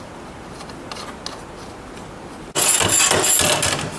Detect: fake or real real